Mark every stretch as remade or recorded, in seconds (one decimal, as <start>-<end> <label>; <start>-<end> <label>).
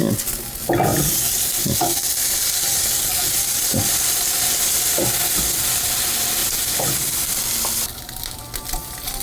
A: 0.0-9.2 recorded